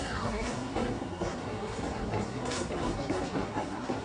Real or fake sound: fake